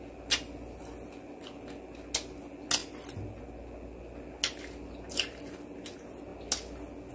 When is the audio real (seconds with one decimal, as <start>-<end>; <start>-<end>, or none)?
0.0-7.1